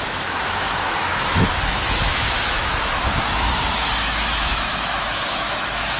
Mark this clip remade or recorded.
remade